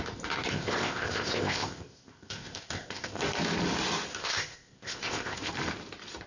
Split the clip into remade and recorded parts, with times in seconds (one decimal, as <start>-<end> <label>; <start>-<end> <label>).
0.0-0.5 recorded; 0.5-3.2 remade; 3.2-4.1 recorded; 4.1-5.5 remade; 5.5-6.3 recorded